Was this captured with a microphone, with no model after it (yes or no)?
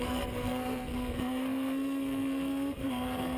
no